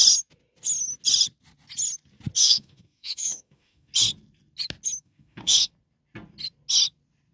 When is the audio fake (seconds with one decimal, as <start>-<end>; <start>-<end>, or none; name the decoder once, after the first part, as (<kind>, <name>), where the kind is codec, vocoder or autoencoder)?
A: 2.4-3.9 (autoencoder, DAC-VAE); 5.0-5.7